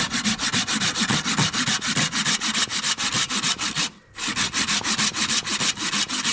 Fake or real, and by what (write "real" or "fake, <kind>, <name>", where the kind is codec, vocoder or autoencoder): real